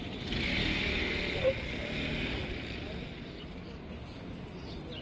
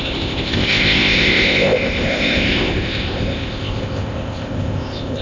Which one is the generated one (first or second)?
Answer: second